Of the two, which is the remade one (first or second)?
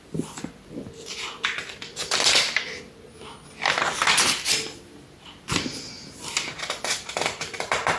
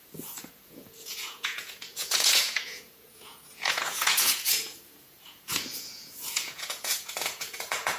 second